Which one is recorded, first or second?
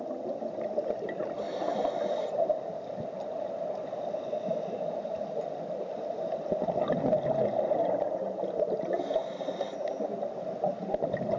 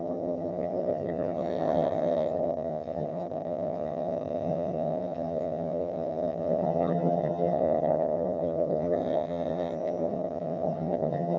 first